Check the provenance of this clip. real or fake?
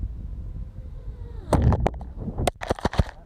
real